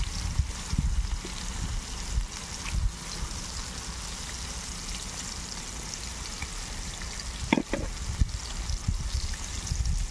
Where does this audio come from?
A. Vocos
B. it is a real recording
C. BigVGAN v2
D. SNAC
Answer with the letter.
B